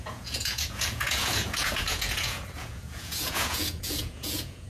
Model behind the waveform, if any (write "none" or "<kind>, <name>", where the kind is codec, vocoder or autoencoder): vocoder, Vocos